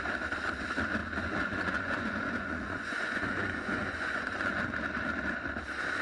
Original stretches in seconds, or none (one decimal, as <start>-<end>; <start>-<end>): 0.0-1.0; 4.6-6.0